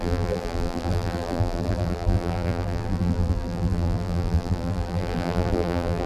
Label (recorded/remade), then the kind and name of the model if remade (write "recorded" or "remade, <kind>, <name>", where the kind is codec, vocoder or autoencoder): remade, vocoder, BigVGAN v2